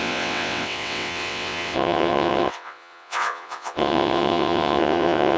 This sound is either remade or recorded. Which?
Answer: remade